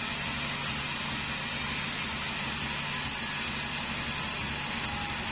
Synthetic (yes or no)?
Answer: no